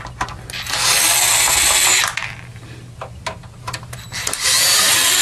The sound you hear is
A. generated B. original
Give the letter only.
B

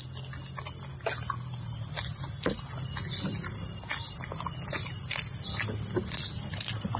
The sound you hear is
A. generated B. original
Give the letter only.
B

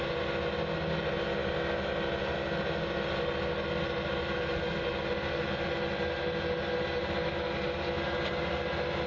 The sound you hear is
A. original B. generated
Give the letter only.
A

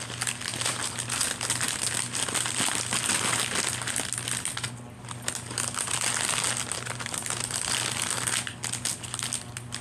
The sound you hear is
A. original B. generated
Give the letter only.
A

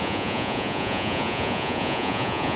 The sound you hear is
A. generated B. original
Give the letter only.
A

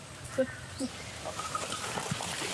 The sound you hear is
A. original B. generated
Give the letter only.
B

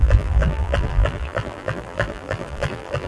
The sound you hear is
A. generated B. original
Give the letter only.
A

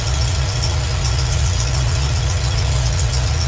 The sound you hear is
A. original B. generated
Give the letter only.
B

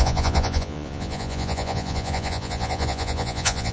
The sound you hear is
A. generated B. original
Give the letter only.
A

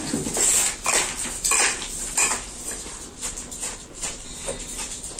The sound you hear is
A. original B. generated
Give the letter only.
A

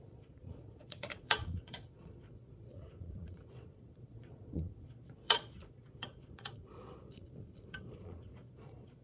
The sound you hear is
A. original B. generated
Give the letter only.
B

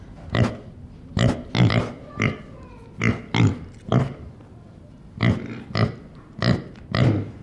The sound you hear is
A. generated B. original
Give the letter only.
B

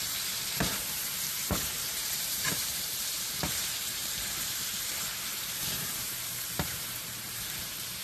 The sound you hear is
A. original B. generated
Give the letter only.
B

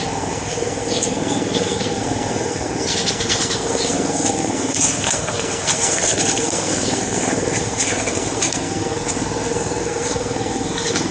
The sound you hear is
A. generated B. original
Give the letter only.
A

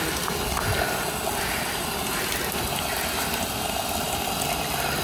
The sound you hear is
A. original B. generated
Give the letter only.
A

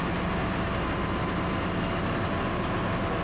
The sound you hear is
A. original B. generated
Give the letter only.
A